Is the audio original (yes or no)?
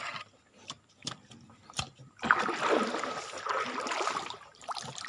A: yes